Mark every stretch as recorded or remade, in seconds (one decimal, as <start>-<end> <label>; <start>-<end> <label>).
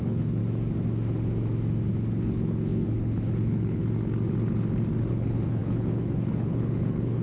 0.0-0.4 remade; 0.4-2.2 recorded; 2.2-3.8 remade; 3.8-5.1 recorded; 5.1-7.2 remade